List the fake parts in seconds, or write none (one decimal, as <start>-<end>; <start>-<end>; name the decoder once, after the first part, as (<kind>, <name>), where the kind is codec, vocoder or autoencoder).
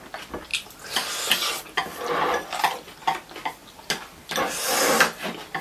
0.5-1.1 (vocoder, BigVGAN v2)